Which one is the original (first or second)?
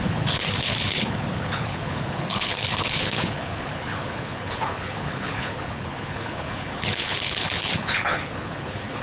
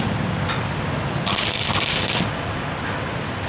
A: second